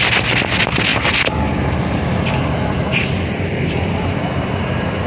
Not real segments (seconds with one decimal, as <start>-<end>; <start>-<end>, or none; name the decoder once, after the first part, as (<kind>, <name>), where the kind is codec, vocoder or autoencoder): none